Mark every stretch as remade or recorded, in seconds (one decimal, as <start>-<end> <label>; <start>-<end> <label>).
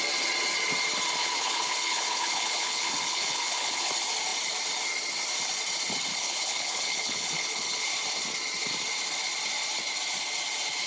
0.0-1.2 recorded; 1.2-3.9 remade; 3.9-6.1 recorded; 6.1-7.9 remade; 7.9-10.9 recorded